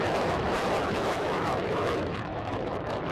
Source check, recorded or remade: remade